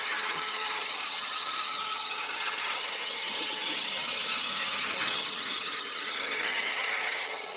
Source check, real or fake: fake